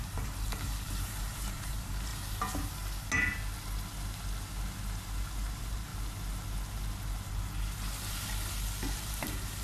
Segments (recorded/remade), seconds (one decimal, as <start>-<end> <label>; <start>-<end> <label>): 0.0-2.1 remade; 2.1-5.2 recorded; 5.2-5.9 remade; 5.9-8.9 recorded; 8.9-9.6 remade